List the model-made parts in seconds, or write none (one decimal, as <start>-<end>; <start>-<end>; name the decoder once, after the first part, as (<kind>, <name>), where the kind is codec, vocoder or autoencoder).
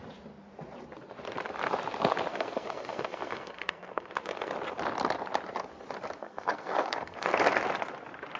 2.3-4.5 (codec, SNAC); 6.2-7.3